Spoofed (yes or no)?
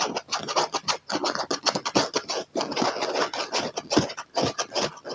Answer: no